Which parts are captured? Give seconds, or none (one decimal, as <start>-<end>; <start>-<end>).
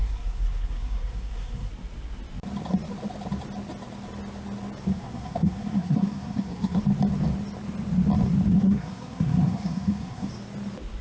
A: 1.7-4.9; 6.8-8.5; 10.3-11.0